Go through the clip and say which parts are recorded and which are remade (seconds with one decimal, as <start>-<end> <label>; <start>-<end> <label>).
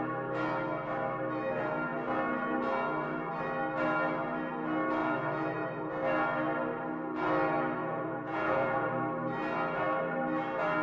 0.0-5.0 recorded; 5.0-5.9 remade; 5.9-7.8 recorded; 7.8-8.9 remade; 8.9-10.8 recorded